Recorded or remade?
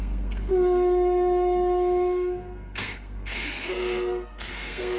remade